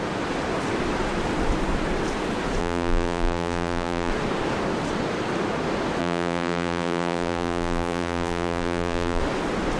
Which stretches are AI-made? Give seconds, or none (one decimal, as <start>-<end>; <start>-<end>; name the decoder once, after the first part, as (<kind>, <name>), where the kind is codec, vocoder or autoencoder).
2.6-4.1 (vocoder, BigVGAN v2); 6.0-9.2